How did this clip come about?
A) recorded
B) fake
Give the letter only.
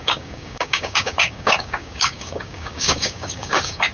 B